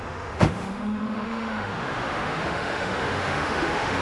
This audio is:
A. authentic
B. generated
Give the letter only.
B